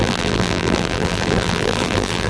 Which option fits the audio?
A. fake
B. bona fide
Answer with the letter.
A